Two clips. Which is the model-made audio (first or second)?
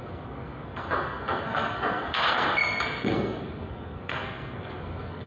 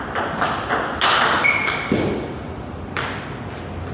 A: first